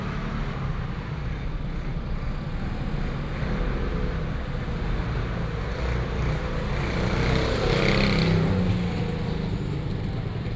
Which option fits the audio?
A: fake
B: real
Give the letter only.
B